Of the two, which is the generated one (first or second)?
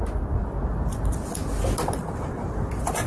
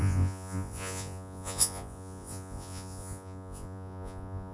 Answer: second